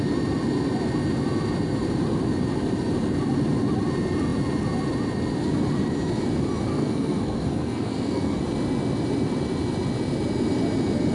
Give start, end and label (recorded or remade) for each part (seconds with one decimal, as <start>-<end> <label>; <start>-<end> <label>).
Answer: 0.0-6.7 recorded; 6.7-8.4 remade; 8.4-11.1 recorded